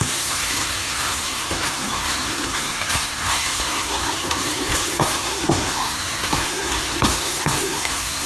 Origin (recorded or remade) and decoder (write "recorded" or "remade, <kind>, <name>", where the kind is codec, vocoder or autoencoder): remade, codec, SNAC